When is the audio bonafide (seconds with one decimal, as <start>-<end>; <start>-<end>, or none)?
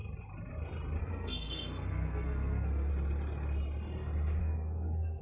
0.0-1.0; 2.9-4.4